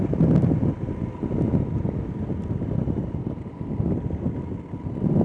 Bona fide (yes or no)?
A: yes